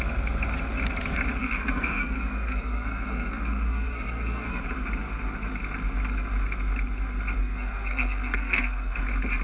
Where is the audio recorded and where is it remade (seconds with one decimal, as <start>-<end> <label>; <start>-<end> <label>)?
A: 0.0-1.4 recorded; 1.4-4.6 remade; 4.6-7.4 recorded; 7.4-9.0 remade; 9.0-9.4 recorded